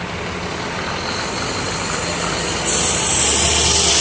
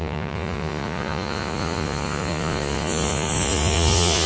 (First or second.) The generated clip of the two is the second